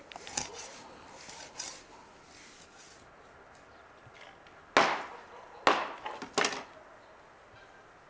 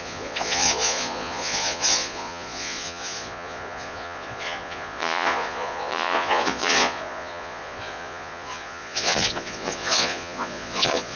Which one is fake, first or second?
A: second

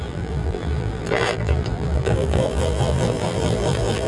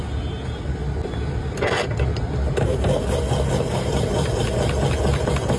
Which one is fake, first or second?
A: first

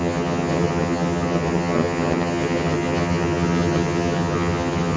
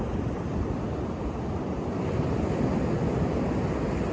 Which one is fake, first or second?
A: first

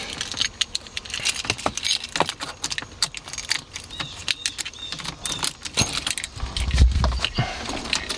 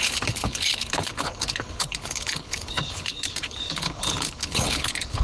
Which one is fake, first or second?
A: second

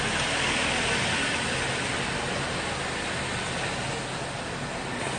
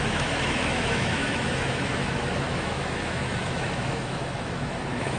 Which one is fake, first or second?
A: second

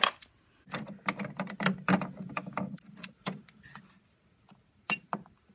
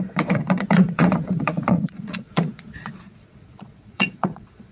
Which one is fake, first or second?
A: second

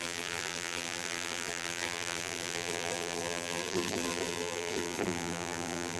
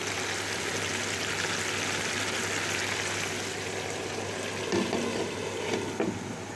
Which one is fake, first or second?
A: first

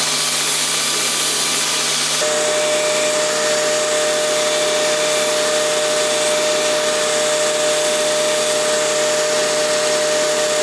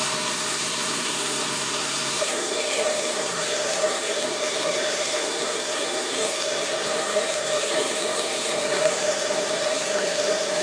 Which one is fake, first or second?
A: second